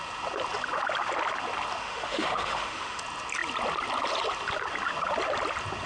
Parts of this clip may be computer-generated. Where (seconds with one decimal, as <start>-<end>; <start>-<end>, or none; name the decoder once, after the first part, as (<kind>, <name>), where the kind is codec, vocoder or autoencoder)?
1.8-3.0 (autoencoder, DAC-VAE)